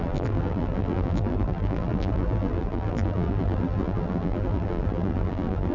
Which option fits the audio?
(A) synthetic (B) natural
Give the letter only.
A